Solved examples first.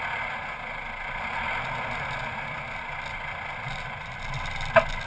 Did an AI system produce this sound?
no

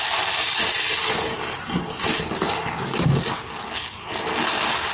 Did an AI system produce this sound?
no